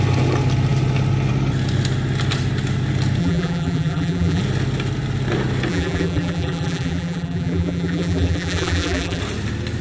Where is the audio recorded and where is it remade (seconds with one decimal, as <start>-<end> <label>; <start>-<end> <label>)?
0.0-3.2 recorded; 3.2-4.4 remade; 4.4-5.7 recorded; 5.7-9.2 remade; 9.2-9.8 recorded